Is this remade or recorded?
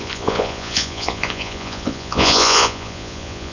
remade